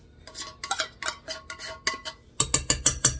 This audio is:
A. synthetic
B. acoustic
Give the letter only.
B